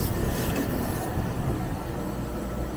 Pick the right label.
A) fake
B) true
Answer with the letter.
B